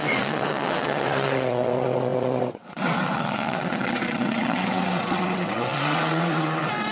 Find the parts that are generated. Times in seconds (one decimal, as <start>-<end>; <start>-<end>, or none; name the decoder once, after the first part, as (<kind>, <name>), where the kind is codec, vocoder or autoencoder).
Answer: 0.0-6.9 (vocoder, WaveNeXt)